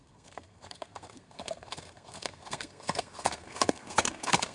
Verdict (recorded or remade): remade